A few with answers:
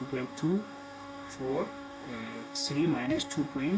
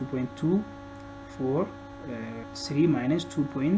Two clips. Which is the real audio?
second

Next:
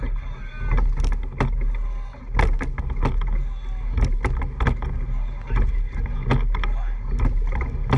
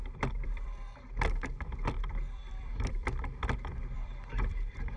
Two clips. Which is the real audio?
first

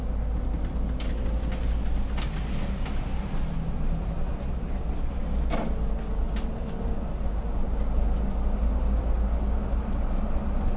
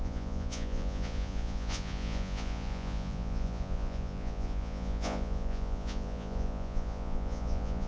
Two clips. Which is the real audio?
first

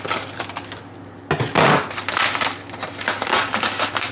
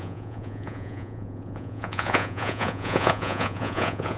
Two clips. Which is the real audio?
first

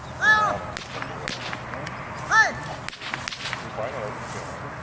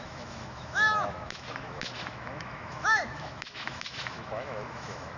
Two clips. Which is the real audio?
first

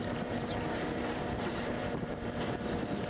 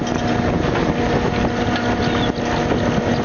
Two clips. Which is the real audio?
second